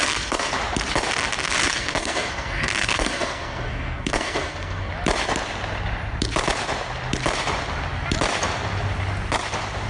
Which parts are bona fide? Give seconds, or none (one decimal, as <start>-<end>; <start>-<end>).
0.6-1.6; 4.9-9.9